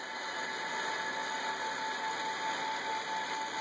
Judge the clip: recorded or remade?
recorded